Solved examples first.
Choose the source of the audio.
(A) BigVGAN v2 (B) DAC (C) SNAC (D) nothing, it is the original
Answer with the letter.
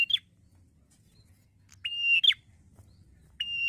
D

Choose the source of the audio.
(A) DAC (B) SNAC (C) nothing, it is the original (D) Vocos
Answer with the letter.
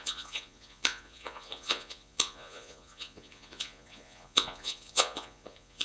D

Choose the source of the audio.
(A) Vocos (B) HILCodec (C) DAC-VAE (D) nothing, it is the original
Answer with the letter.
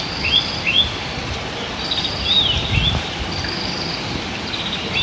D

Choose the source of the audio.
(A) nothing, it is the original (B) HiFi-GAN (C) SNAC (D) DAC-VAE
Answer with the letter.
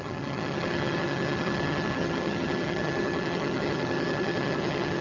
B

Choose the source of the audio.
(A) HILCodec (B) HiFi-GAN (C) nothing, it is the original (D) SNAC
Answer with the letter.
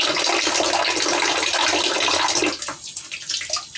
C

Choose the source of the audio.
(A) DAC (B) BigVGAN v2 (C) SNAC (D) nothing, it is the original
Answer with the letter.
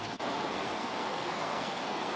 C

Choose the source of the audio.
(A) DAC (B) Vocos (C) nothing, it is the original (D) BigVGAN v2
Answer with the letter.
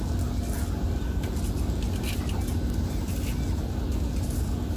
C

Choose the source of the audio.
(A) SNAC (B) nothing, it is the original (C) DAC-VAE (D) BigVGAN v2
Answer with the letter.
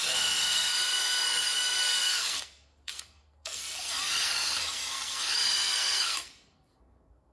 A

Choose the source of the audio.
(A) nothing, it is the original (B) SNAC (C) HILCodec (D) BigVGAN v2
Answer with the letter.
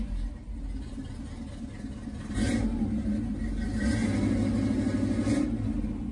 A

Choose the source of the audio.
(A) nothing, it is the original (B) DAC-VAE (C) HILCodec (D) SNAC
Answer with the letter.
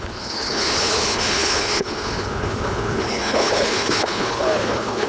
C